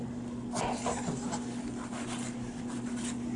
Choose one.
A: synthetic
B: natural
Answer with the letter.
B